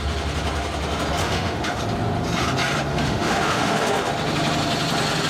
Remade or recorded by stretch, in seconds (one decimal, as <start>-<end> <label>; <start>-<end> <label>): 0.0-1.2 recorded; 1.2-1.8 remade; 1.8-2.9 recorded; 2.9-4.1 remade; 4.1-5.3 recorded